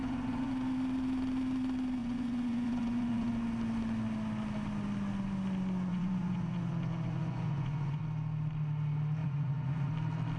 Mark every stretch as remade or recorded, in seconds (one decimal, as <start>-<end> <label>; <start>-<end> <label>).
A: 0.0-0.5 remade; 0.5-2.0 recorded; 2.0-3.3 remade; 3.3-5.9 recorded; 5.9-8.0 remade; 8.0-9.2 recorded; 9.2-9.9 remade; 9.9-10.4 recorded